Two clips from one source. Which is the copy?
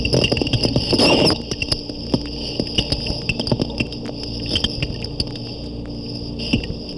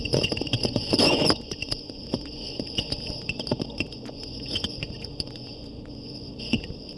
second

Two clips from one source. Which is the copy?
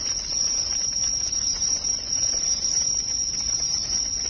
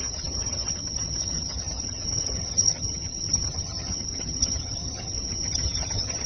second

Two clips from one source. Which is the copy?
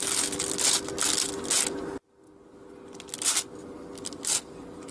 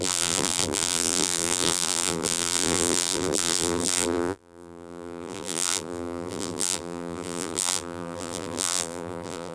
second